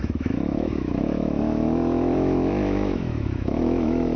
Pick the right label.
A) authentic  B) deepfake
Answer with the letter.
B